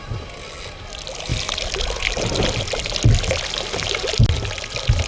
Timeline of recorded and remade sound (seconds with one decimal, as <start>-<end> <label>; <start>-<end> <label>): 0.0-5.1 recorded